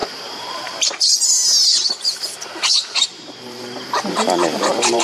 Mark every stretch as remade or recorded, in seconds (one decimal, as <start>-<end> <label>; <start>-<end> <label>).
0.0-1.3 remade; 1.3-2.7 recorded; 2.7-5.0 remade